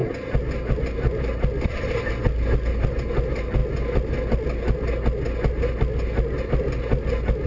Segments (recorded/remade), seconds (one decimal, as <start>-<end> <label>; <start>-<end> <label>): 0.0-7.5 recorded